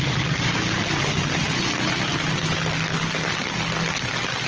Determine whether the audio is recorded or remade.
recorded